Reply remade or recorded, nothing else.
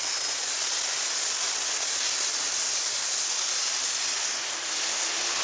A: recorded